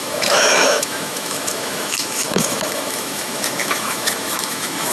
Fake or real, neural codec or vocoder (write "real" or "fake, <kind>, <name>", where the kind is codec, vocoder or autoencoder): fake, autoencoder, DAC-VAE